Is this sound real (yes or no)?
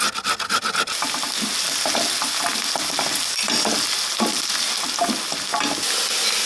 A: yes